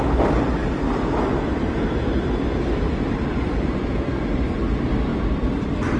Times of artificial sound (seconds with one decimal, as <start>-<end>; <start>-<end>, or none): 0.6-4.2; 5.1-6.0